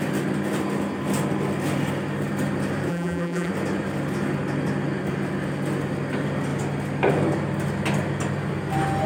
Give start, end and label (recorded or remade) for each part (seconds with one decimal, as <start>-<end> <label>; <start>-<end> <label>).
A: 0.0-2.9 recorded; 2.9-3.5 remade; 3.5-9.1 recorded